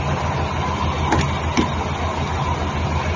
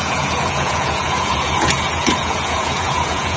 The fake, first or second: second